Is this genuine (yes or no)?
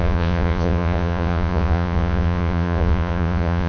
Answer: no